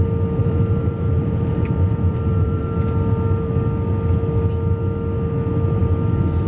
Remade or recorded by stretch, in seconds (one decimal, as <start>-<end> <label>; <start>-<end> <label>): 0.0-0.4 recorded; 0.4-2.6 remade; 2.6-6.5 recorded